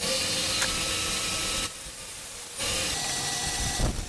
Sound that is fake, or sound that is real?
real